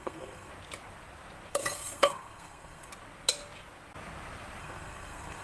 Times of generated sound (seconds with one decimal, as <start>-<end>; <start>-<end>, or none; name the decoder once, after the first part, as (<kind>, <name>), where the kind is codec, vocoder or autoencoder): 0.0-0.5 (codec, SNAC); 1.5-2.9; 4.6-5.4

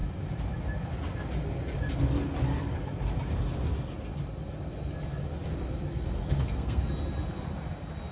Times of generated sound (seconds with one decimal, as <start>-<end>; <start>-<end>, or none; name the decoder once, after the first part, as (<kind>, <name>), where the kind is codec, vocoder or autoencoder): 6.2-6.9 (codec, SNAC)

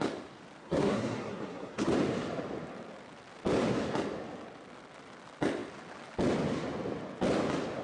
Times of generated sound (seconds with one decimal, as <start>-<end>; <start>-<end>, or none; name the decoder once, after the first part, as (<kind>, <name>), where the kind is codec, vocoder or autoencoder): 0.6-1.9 (codec, SNAC)

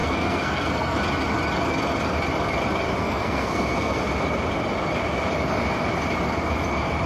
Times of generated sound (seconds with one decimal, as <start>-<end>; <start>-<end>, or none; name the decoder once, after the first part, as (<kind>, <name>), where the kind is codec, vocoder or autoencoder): 0.0-1.0 (codec, SNAC); 3.0-4.0

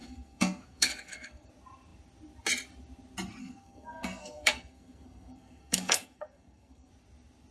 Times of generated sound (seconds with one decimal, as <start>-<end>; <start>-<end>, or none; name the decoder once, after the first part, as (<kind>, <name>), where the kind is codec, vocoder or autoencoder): 0.0-1.5 (codec, SNAC); 3.4-6.9